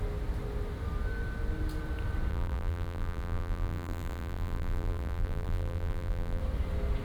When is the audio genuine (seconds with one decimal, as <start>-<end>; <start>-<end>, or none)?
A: 0.0-2.3; 6.4-7.0